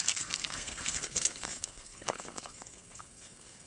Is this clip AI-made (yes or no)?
yes